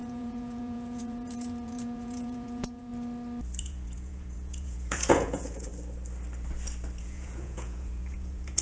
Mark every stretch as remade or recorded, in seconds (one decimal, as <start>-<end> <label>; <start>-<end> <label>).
0.0-2.9 remade; 2.9-3.6 recorded; 3.6-5.7 remade; 5.7-7.0 recorded; 7.0-8.6 remade